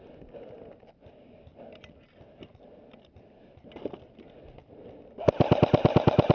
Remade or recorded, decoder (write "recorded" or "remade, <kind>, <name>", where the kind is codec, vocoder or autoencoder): recorded